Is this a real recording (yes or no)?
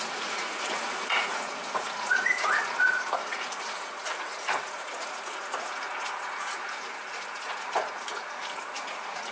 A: no